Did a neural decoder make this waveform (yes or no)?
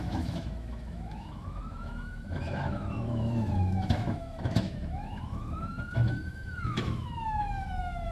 yes